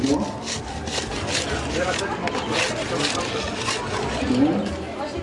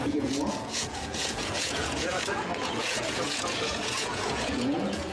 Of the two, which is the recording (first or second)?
first